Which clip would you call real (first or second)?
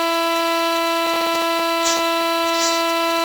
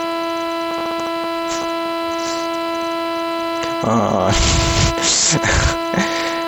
second